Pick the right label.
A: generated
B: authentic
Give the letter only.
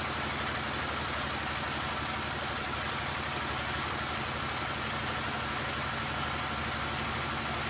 B